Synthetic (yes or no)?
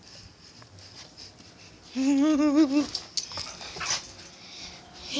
no